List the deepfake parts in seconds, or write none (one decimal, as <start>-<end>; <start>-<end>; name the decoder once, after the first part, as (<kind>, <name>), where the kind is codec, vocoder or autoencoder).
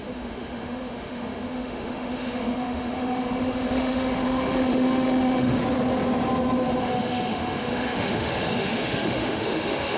0.0-5.6 (autoencoder, DAC-VAE); 6.8-10.0